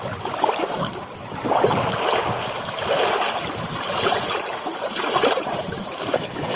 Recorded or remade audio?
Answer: remade